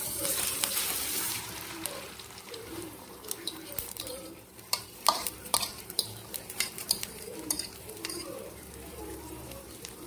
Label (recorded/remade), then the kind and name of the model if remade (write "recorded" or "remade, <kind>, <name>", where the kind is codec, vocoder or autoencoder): remade, vocoder, BigVGAN v2